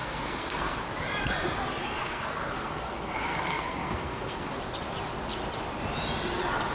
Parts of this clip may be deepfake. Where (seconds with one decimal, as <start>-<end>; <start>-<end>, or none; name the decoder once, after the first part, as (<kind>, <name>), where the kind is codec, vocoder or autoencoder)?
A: 0.0-0.8 (codec, SNAC); 1.8-4.5